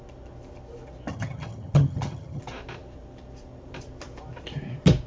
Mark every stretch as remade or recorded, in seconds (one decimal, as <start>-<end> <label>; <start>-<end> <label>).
0.0-1.1 recorded; 1.1-2.4 remade; 2.4-5.1 recorded